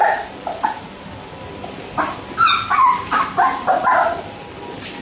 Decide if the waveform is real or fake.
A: real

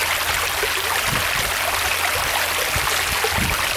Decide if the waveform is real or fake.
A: real